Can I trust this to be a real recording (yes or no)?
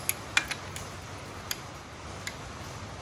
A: yes